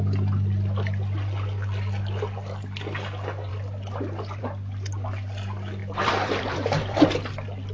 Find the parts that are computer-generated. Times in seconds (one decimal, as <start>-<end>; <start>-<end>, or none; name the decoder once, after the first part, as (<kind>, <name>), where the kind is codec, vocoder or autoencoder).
5.8-7.0 (vocoder, BigVGAN v2)